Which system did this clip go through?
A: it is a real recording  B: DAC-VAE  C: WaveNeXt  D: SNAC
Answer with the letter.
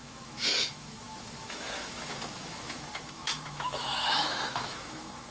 B